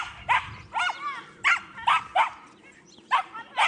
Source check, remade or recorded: recorded